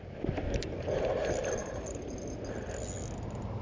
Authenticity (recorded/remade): recorded